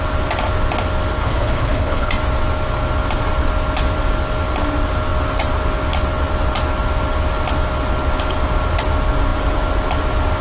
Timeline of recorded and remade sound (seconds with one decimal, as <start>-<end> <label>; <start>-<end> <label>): 0.0-1.2 recorded; 1.2-2.1 remade; 2.1-10.4 recorded